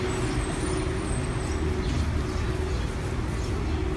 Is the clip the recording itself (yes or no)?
yes